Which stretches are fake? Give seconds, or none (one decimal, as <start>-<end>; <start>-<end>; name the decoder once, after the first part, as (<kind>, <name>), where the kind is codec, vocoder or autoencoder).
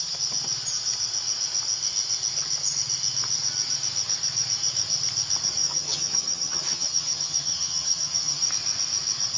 5.6-8.5 (vocoder, HiFi-GAN)